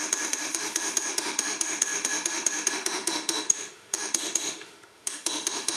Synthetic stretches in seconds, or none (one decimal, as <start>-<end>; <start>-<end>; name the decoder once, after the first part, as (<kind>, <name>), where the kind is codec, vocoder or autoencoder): 0.0-5.8 (autoencoder, DAC-VAE)